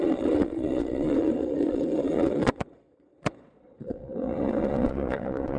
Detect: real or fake fake